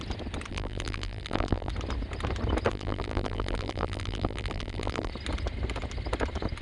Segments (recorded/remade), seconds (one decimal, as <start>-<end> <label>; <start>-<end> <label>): 0.0-0.5 recorded; 0.5-1.7 remade; 1.7-2.7 recorded; 2.7-5.1 remade; 5.1-6.6 recorded